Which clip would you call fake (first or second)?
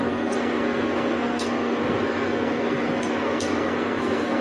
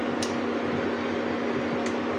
first